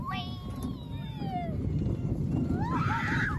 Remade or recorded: recorded